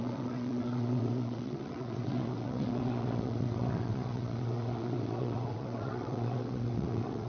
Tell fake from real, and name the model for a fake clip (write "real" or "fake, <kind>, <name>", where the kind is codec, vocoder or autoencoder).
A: fake, vocoder, WaveNeXt